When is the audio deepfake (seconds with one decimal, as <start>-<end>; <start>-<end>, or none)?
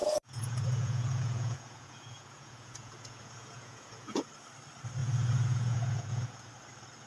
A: 0.0-4.3; 5.0-6.5